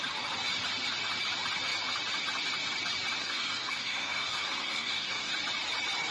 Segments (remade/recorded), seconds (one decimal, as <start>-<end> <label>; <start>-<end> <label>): 0.0-3.2 recorded; 3.2-5.3 remade; 5.3-6.1 recorded